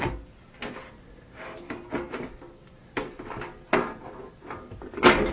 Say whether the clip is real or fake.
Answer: real